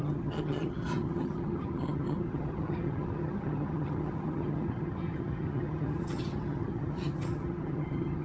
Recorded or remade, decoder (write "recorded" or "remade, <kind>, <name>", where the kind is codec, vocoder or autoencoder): remade, vocoder, HiFi-GAN